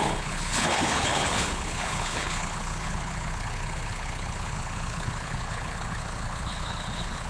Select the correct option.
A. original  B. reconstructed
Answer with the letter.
B